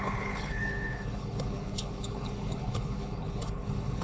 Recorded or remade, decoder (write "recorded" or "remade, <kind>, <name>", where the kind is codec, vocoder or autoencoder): remade, codec, HILCodec